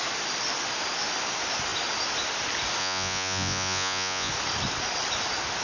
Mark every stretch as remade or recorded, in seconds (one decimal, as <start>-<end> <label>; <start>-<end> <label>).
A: 0.0-2.8 recorded; 2.8-4.3 remade; 4.3-5.6 recorded

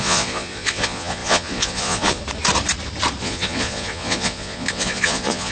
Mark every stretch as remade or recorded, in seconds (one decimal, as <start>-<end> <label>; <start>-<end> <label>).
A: 0.0-2.2 remade; 2.2-3.2 recorded; 3.2-5.5 remade

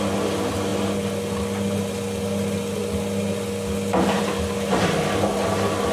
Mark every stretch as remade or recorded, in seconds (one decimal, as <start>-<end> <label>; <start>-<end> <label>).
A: 0.0-5.9 recorded

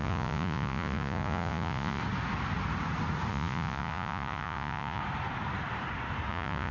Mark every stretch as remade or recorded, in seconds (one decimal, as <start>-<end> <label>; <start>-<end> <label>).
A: 0.0-2.0 remade; 2.0-3.3 recorded; 3.3-5.0 remade; 5.0-6.3 recorded; 6.3-6.7 remade

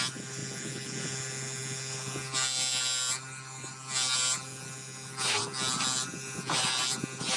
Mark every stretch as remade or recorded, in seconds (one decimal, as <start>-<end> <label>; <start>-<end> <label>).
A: 0.0-7.4 recorded

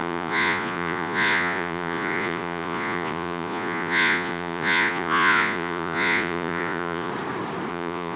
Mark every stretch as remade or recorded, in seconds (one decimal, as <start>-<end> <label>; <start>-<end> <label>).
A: 0.0-7.1 remade; 7.1-7.7 recorded; 7.7-8.2 remade

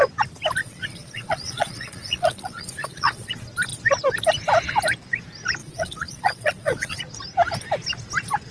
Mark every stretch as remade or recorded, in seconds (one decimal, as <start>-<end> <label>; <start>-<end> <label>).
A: 0.0-0.6 recorded; 0.6-3.3 remade; 3.3-5.6 recorded; 5.6-7.0 remade; 7.0-8.5 recorded